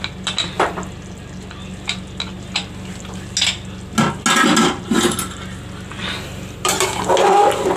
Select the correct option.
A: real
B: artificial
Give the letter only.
A